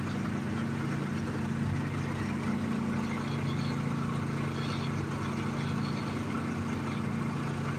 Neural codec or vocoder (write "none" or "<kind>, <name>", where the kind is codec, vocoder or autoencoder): none